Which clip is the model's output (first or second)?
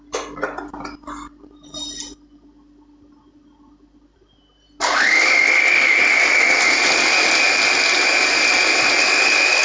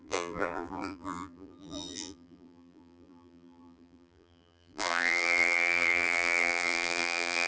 second